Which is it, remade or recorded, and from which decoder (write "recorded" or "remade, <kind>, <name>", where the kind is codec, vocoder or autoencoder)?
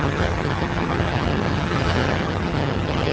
remade, vocoder, HiFi-GAN